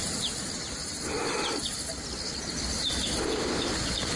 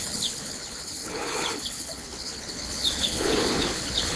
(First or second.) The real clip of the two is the first